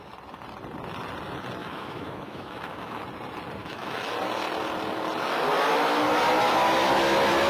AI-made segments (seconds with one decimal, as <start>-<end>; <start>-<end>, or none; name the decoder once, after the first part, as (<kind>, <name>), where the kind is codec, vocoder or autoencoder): 1.6-3.0 (autoencoder, DAC-VAE); 3.6-4.1